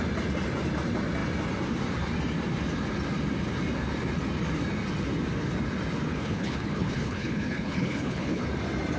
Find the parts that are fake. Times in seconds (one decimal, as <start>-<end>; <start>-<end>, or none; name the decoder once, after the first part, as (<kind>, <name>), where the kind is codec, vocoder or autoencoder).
6.1-8.4 (codec, HILCodec)